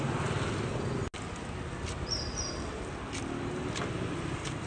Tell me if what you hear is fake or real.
real